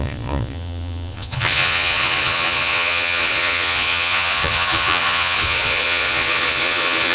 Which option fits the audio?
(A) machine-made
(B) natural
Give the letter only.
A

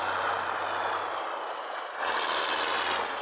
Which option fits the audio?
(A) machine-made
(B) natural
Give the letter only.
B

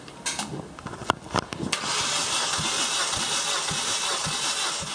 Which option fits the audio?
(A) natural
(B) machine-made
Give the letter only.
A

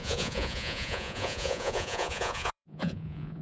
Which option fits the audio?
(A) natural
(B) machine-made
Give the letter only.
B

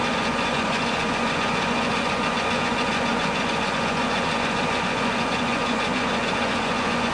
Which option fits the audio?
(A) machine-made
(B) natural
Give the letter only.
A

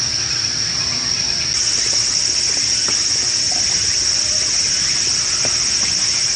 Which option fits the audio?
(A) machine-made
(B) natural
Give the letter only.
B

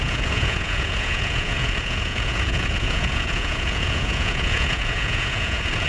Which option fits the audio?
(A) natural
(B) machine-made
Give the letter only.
B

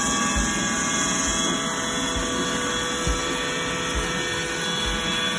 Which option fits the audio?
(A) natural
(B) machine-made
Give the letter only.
A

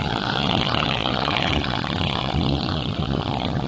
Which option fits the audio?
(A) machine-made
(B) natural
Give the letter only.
A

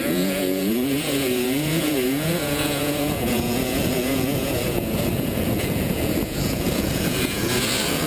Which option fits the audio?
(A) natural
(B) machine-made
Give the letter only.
B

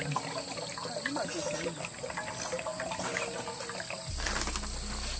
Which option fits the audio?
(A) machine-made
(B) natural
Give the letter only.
B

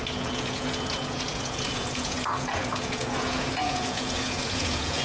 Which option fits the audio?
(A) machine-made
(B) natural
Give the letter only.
A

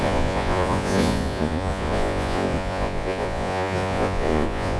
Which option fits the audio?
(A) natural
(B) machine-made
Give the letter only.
B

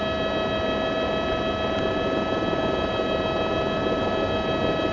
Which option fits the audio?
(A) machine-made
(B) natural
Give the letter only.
B